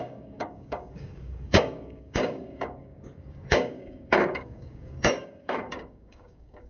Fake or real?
fake